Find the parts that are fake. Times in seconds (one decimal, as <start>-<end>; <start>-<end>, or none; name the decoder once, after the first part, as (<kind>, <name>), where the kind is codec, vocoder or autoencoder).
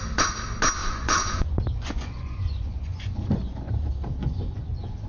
0.8-3.7 (vocoder, Vocos); 4.2-5.1